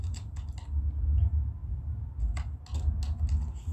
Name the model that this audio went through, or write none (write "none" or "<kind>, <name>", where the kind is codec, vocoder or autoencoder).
none